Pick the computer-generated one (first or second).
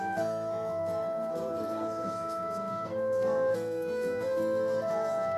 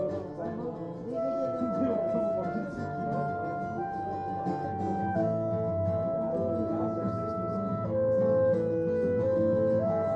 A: first